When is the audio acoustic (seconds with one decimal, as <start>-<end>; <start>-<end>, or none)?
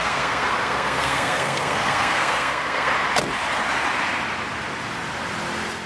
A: 2.9-5.9